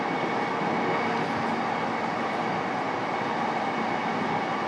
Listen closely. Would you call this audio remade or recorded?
recorded